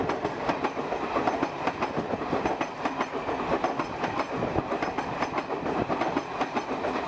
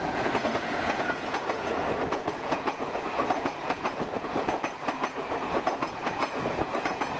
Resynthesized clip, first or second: second